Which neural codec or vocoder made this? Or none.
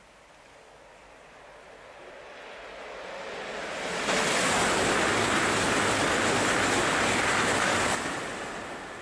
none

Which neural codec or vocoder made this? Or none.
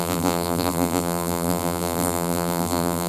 vocoder, BigVGAN v2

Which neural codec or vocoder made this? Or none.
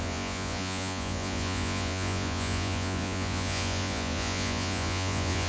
vocoder, Vocos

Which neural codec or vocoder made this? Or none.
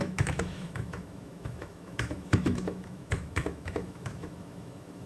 autoencoder, DAC-VAE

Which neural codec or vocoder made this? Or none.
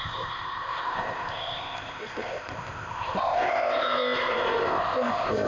codec, ZipCodec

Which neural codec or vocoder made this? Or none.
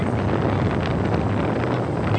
none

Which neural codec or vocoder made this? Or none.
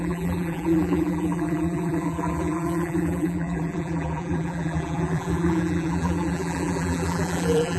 vocoder, BigVGAN v2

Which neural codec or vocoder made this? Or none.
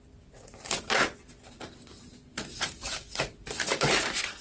none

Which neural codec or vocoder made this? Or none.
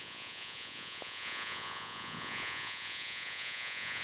vocoder, Vocos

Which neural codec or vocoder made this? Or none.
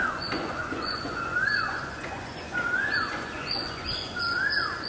vocoder, Vocos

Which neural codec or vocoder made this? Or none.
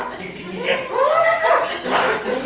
none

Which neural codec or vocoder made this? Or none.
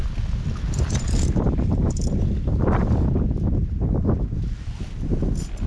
none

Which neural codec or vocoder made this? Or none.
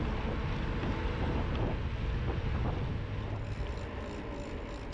none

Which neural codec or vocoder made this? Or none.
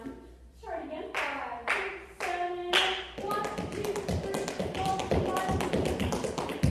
none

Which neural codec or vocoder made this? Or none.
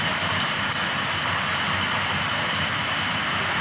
none